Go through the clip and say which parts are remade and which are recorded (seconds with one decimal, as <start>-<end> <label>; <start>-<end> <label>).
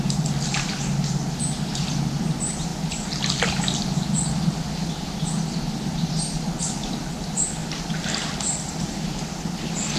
0.0-7.6 recorded; 7.6-9.4 remade; 9.4-10.0 recorded